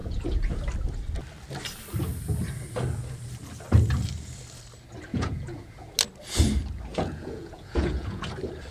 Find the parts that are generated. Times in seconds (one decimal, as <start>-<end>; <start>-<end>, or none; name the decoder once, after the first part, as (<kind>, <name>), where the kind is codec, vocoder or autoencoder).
0.0-0.5 (vocoder, Vocos); 5.1-5.9; 6.9-8.2